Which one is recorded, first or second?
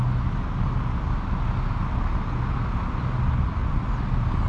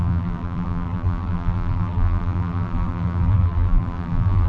first